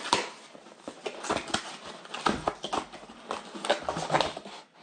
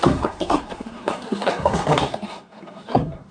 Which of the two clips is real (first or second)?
first